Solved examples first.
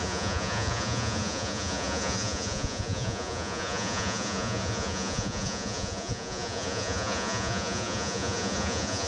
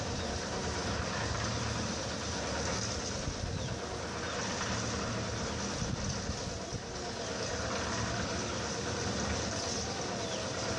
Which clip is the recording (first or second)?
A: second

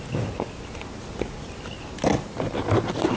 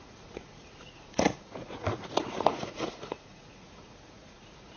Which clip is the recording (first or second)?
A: first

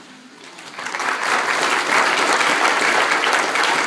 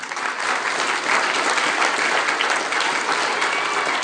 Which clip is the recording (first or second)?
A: second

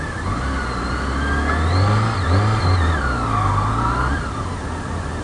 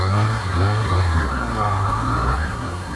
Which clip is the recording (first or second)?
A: first